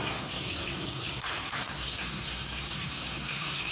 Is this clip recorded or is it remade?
remade